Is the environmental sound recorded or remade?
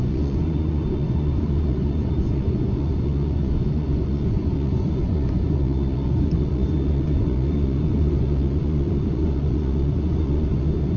remade